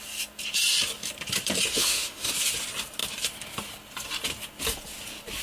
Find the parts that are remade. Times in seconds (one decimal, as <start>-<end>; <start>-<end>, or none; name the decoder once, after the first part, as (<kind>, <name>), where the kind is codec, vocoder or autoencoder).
1.7-2.3 (autoencoder, DAC-VAE)

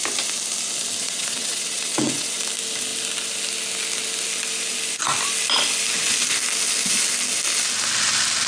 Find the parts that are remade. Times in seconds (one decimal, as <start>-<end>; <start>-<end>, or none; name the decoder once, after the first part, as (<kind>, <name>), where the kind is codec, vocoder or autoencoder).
1.0-2.4 (vocoder, WaveNeXt)